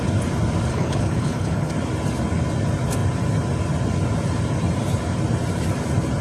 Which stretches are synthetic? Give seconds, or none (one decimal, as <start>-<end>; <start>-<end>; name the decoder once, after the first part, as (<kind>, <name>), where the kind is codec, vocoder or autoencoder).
0.7-1.7 (codec, HILCodec)